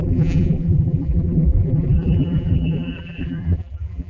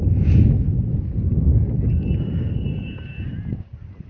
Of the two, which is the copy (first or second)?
first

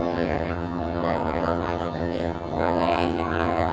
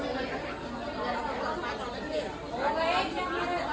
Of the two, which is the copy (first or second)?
first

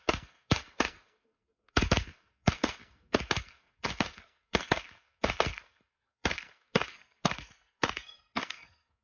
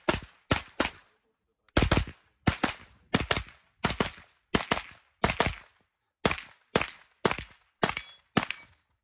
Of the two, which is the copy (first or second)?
first